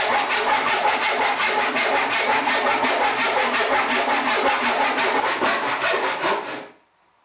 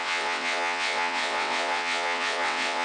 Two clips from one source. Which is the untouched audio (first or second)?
first